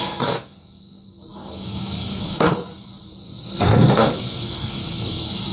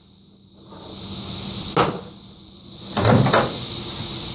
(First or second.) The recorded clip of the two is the second